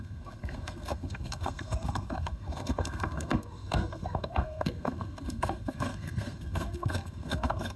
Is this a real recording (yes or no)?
no